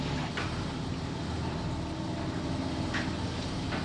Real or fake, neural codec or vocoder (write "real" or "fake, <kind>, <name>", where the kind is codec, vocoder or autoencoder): real